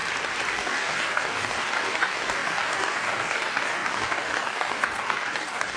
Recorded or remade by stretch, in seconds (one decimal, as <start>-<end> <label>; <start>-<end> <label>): 0.0-0.5 recorded; 0.5-5.8 remade